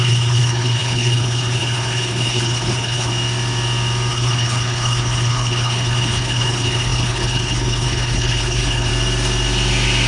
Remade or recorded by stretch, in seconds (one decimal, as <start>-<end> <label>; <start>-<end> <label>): 0.0-3.1 remade; 3.1-4.1 recorded; 4.1-8.9 remade; 8.9-10.1 recorded